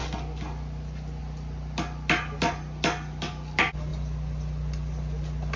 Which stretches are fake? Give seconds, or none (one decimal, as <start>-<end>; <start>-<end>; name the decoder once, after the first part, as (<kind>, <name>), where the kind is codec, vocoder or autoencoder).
none